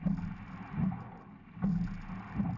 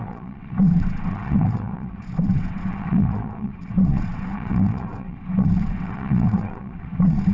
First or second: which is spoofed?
second